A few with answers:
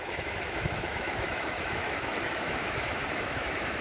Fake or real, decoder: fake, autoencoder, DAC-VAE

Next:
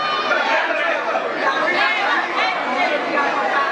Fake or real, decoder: real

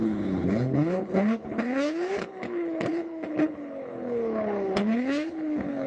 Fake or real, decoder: fake, codec, HILCodec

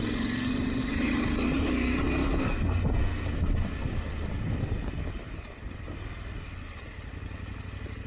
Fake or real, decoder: real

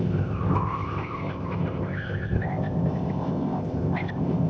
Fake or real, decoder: fake, codec, ZipCodec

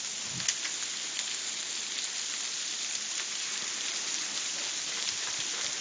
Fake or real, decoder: real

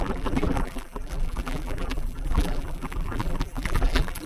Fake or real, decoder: fake, vocoder, BigVGAN v2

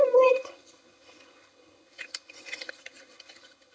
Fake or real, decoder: fake, vocoder, HiFi-GAN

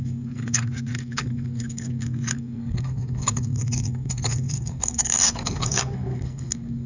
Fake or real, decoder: fake, codec, SNAC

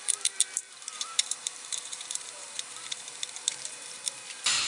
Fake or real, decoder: fake, vocoder, BigVGAN v2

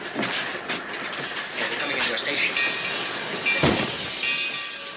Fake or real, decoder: real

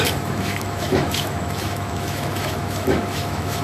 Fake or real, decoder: fake, autoencoder, DAC-VAE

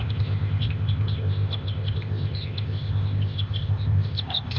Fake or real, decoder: fake, codec, ZipCodec